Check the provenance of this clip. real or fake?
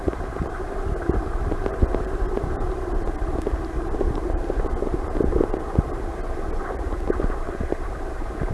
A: real